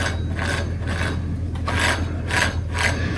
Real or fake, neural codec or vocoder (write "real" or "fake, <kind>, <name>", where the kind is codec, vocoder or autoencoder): real